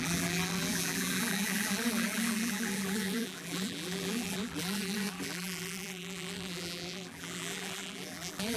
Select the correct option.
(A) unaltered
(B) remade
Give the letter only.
B